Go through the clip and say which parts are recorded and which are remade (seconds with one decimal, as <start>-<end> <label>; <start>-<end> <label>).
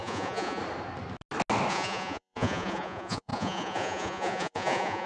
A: 0.0-0.6 remade; 0.6-1.7 recorded; 1.7-5.1 remade